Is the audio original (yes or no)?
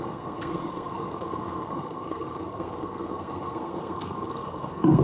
no